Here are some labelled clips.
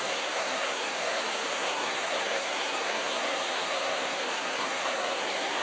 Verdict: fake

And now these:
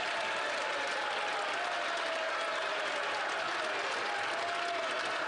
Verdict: real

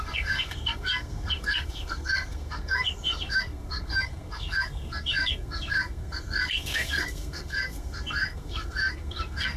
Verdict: fake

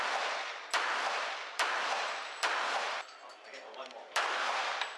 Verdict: real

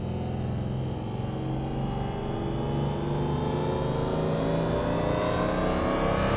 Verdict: real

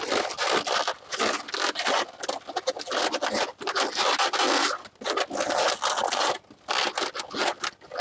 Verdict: real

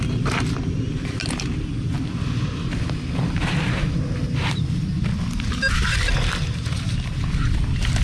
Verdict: real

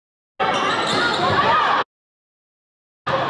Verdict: real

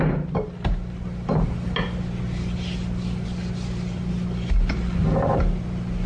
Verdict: real